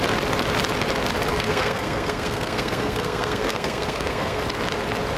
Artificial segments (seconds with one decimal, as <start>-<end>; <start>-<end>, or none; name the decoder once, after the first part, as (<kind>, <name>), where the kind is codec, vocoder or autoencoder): 1.3-4.4 (codec, SNAC)